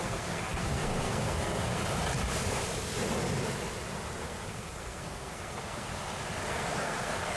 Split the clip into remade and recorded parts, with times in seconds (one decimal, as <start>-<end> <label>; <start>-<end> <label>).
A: 0.0-1.8 remade; 1.8-4.2 recorded; 4.2-5.9 remade; 5.9-6.5 recorded; 6.5-7.4 remade

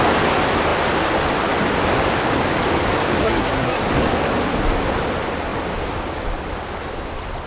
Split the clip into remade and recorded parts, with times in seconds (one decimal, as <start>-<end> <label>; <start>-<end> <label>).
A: 0.0-3.2 recorded; 3.2-3.8 remade; 3.8-7.5 recorded

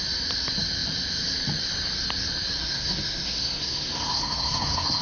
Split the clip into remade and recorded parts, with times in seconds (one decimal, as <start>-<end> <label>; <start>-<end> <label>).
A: 0.0-2.6 recorded; 2.6-5.0 remade